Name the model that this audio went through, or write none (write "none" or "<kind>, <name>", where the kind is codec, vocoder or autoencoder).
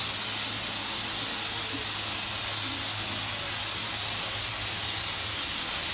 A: none